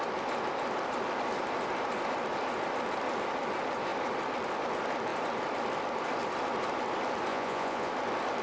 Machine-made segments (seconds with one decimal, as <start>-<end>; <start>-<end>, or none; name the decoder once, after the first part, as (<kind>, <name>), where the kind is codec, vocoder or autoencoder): 7.3-7.9 (vocoder, Vocos)